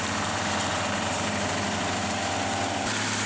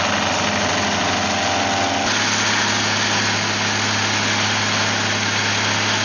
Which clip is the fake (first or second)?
first